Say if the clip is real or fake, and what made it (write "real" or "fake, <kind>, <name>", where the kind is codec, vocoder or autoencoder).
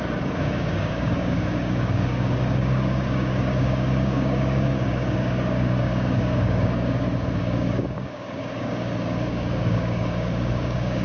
fake, codec, DAC